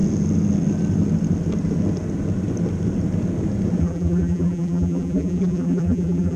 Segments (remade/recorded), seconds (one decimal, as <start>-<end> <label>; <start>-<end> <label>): 0.0-3.8 recorded; 3.8-6.4 remade